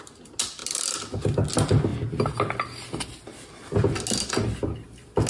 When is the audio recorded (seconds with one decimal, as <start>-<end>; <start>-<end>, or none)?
0.0-5.3

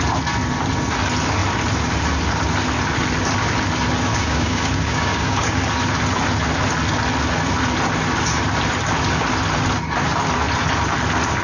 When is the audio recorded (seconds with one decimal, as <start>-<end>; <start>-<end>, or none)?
0.0-4.1; 5.5-11.4

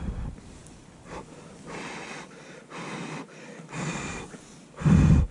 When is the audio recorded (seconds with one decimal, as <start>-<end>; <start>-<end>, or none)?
0.0-5.3

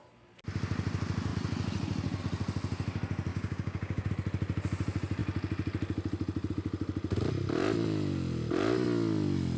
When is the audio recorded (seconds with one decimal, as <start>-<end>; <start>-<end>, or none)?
0.0-3.3; 4.1-9.6